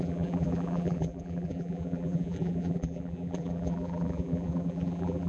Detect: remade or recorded remade